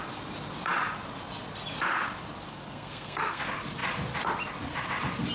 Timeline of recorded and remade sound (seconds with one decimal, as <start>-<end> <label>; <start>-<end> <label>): 0.0-2.5 recorded; 2.5-3.4 remade; 3.4-5.3 recorded